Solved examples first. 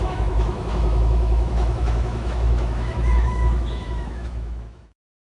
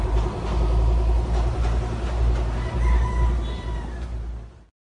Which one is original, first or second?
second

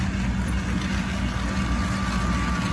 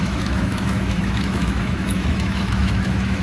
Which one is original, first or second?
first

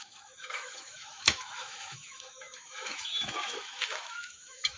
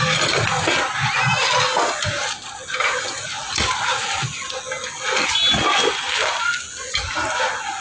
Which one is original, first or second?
second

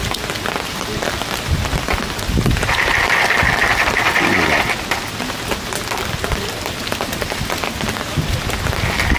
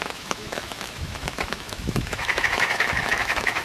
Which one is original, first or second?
first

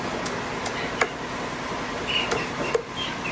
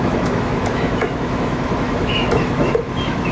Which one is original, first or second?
first